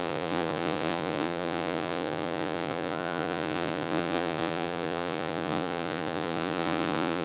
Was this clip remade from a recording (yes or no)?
yes